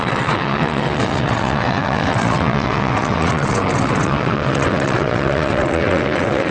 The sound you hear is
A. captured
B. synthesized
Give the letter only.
B